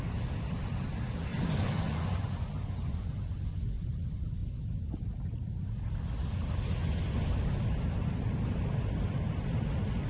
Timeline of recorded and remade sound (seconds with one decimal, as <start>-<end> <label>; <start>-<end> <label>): 0.0-1.3 recorded; 1.3-3.8 remade; 3.8-6.8 recorded; 6.8-7.3 remade; 7.3-10.1 recorded